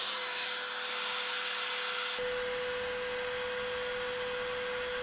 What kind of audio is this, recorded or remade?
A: recorded